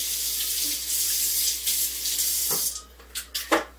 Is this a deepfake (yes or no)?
no